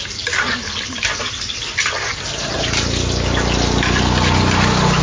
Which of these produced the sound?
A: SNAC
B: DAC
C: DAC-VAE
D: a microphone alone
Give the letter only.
D